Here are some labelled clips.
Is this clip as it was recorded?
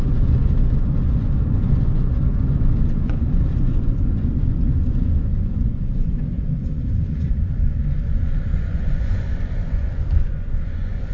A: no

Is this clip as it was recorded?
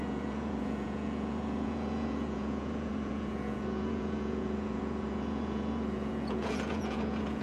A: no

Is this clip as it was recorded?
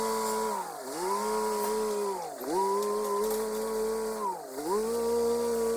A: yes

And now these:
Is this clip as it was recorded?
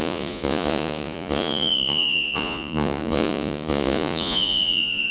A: no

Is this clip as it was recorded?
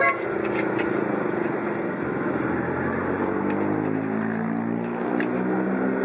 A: yes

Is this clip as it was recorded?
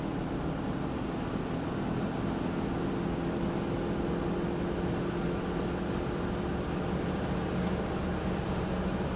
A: yes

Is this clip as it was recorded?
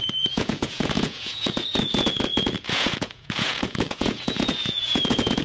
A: no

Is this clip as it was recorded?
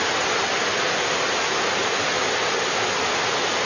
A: yes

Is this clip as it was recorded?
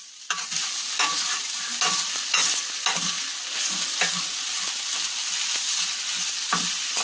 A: yes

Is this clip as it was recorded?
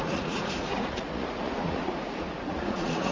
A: no